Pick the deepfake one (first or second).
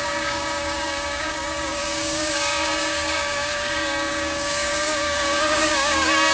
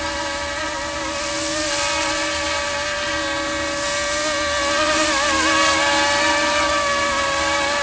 first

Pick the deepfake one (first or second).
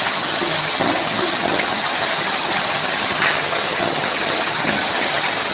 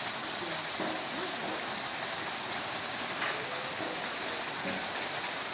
first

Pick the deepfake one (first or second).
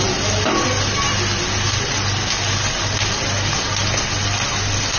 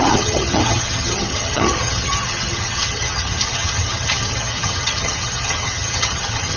second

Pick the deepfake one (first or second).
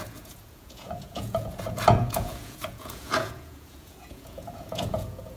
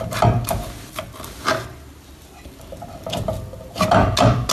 first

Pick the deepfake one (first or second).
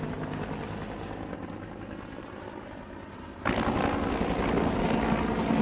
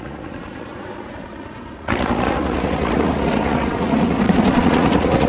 second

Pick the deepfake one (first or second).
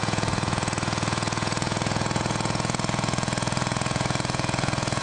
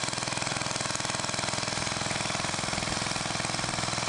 first